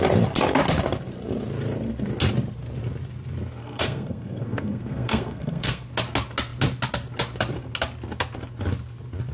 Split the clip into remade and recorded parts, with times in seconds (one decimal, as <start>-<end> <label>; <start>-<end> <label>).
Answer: 0.0-3.6 recorded; 3.6-5.9 remade; 5.9-9.3 recorded